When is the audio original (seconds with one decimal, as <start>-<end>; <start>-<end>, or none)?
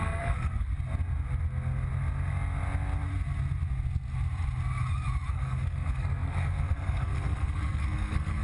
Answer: 0.7-5.3